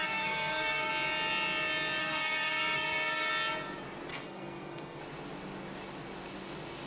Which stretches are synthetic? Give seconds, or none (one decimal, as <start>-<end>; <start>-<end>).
0.0-0.9; 2.0-3.3; 4.1-5.0